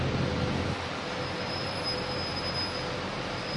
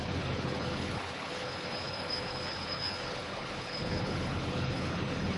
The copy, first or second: second